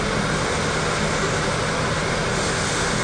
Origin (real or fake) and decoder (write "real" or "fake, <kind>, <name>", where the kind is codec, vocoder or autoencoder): real